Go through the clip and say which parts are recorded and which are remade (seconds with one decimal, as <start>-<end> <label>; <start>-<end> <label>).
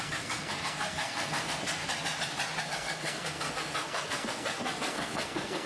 0.0-1.8 remade; 1.8-2.6 recorded; 2.6-5.7 remade